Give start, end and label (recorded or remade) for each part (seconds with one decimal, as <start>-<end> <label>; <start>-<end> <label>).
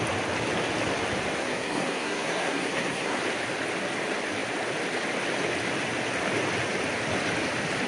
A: 0.0-1.4 recorded; 1.4-3.2 remade; 3.2-7.9 recorded